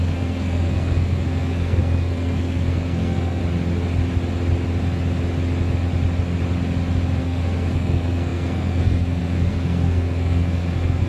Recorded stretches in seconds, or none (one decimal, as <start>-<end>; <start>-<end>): 3.4-7.2